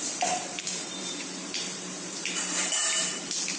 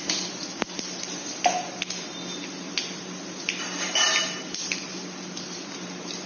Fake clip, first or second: first